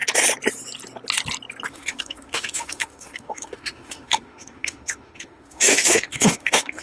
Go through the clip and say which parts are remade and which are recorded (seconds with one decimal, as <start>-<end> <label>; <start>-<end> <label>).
0.0-1.7 recorded; 1.7-6.8 remade